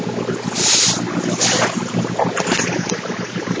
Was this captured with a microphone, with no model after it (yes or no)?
yes